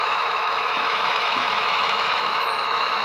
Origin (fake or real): fake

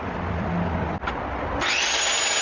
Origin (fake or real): real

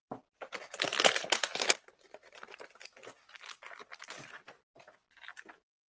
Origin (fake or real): real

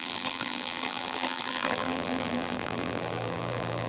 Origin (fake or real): fake